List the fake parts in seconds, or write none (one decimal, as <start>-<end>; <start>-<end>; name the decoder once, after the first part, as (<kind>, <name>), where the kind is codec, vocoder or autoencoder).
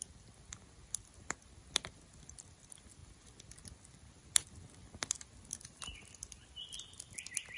none